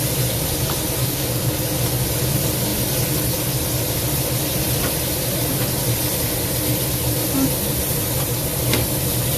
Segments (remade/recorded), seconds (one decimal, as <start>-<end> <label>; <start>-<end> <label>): 0.0-1.0 recorded; 1.0-1.5 remade; 1.5-9.4 recorded

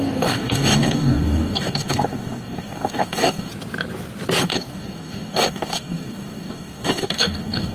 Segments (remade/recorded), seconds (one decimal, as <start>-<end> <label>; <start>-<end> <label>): 0.0-3.5 remade; 3.5-4.4 recorded; 4.4-7.7 remade

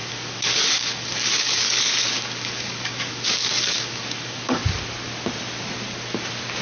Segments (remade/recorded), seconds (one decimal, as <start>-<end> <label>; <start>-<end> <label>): 0.0-4.6 remade; 4.6-6.6 recorded